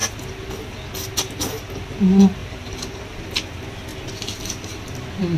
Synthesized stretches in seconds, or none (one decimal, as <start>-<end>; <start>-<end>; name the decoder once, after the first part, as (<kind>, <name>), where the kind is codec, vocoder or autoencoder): 2.4-3.2 (vocoder, BigVGAN v2)